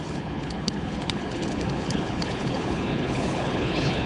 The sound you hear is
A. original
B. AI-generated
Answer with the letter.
B